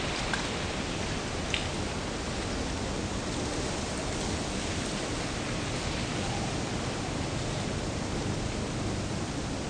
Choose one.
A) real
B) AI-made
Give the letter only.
B